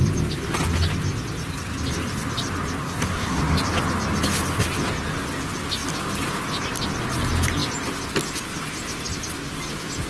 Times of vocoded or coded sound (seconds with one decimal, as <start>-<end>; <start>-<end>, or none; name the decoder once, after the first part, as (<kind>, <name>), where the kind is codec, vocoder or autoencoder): 2.8-3.4 (codec, SNAC)